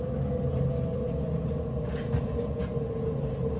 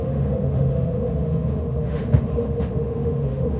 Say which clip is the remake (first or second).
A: second